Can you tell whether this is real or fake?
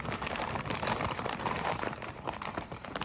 fake